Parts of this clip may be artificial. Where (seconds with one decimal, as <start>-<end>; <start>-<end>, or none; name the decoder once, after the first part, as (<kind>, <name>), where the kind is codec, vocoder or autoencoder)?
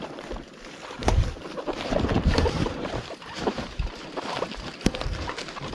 1.0-4.4 (vocoder, BigVGAN v2)